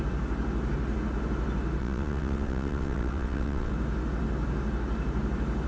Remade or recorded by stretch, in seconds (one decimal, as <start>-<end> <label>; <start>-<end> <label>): 0.0-1.8 recorded; 1.8-3.7 remade; 3.7-5.7 recorded